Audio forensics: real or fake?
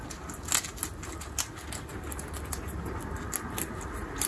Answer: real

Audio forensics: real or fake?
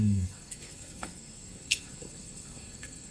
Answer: fake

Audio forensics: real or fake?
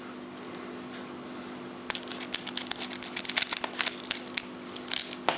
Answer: real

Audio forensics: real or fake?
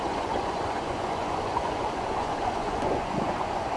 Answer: fake